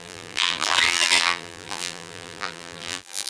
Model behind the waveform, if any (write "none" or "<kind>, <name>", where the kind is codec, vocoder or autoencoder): vocoder, BigVGAN v2